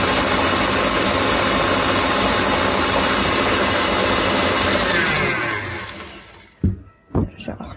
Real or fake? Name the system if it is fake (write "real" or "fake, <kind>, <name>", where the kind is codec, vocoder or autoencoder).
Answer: real